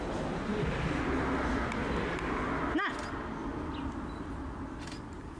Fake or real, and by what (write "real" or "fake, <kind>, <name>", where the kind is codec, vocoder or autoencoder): real